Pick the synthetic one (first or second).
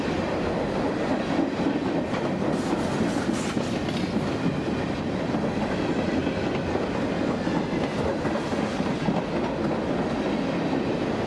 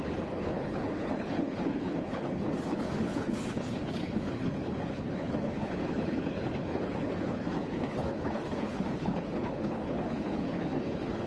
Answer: second